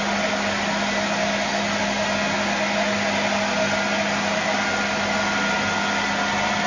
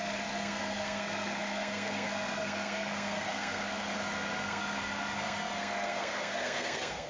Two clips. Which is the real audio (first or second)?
first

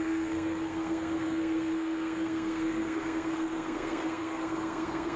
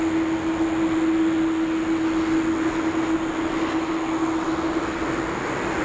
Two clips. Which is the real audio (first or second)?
second